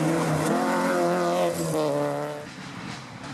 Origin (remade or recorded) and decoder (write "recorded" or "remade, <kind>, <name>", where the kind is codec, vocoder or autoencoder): recorded